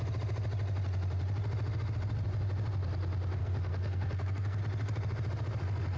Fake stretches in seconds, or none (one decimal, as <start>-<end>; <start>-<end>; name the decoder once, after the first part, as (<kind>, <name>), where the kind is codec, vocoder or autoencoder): 3.4-4.6 (codec, SNAC)